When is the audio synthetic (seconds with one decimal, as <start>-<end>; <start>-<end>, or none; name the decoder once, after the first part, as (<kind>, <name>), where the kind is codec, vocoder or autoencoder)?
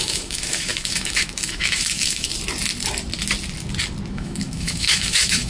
0.0-2.3 (autoencoder, DAC-VAE); 4.1-5.5